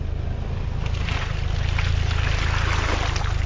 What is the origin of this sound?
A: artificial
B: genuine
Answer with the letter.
B